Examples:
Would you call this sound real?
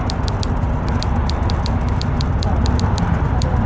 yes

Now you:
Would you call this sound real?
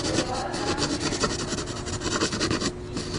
yes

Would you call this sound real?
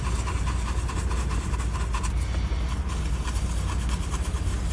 yes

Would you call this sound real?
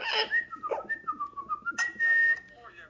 yes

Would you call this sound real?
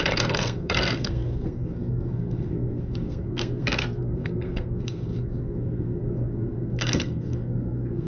no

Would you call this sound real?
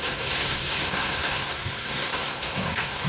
no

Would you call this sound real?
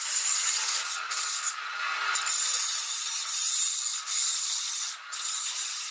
yes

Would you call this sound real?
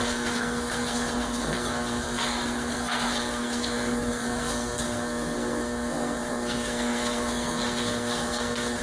no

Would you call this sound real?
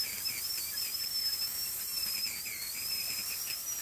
yes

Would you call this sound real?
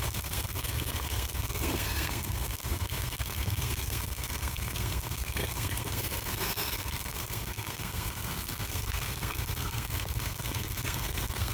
no